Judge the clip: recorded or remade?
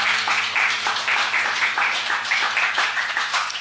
remade